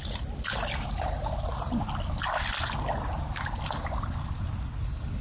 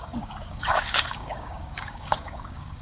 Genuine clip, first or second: first